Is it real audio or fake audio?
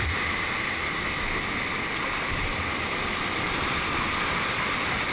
real